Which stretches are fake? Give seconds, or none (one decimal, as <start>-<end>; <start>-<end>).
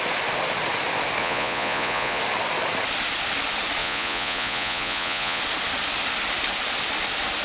1.2-2.2; 3.8-5.4